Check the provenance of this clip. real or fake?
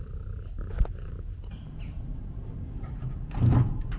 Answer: real